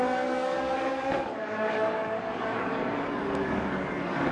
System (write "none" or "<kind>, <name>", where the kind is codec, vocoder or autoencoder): codec, DAC